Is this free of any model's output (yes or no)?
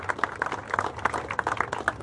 yes